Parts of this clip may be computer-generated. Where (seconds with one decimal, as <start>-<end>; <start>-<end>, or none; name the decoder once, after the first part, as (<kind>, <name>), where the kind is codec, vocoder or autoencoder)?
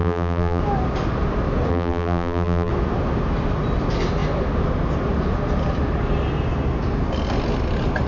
0.0-0.6 (vocoder, BigVGAN v2); 1.7-2.7